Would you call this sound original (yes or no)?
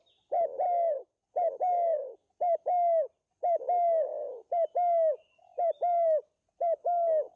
yes